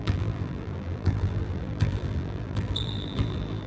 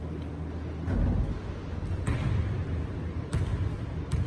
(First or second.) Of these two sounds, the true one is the second